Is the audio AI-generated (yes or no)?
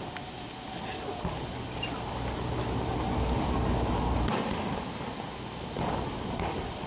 no